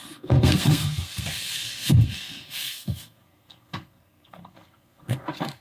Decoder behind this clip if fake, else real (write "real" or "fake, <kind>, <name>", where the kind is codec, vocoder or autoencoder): fake, codec, SNAC